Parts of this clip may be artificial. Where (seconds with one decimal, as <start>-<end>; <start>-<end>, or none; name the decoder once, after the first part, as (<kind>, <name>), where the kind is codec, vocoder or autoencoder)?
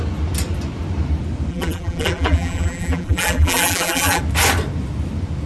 1.5-4.2 (vocoder, BigVGAN v2)